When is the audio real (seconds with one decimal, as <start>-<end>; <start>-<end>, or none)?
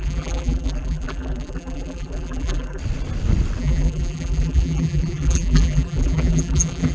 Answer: 2.8-3.6